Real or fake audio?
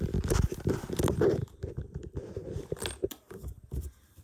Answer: fake